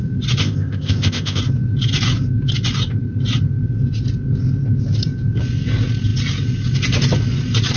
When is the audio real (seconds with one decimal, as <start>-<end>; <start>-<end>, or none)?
0.0-0.4; 1.4-7.8